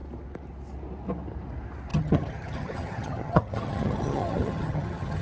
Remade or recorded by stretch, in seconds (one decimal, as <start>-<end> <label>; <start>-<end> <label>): 0.0-1.9 recorded; 1.9-5.2 remade